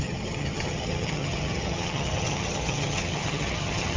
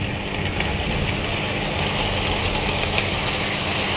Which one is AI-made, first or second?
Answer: first